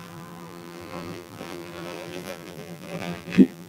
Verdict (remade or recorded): remade